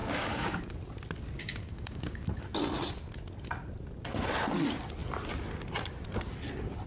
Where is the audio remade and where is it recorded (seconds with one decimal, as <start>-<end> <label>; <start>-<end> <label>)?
0.0-0.7 remade; 0.7-1.4 recorded; 1.4-2.2 remade; 2.2-6.9 recorded